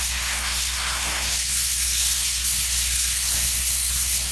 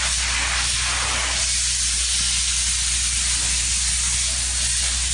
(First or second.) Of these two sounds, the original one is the second